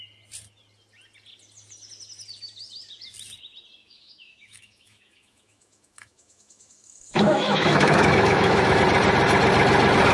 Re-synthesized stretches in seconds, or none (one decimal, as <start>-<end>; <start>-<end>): 3.8-8.8